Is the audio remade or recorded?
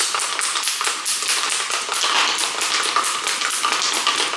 recorded